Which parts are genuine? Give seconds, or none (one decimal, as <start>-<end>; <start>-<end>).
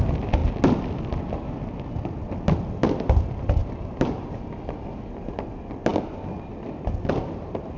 0.0-3.6; 4.4-7.8